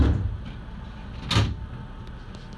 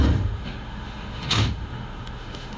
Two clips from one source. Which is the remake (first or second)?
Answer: second